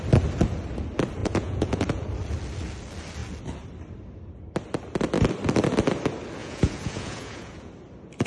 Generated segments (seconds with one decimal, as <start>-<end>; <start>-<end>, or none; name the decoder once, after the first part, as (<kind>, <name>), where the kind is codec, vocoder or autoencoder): 1.2-2.0 (vocoder, Vocos); 6.4-7.7